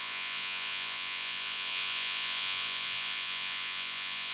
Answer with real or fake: fake